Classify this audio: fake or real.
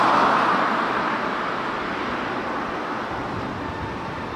real